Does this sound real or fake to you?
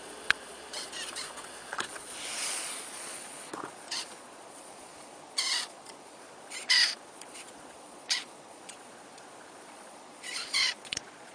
fake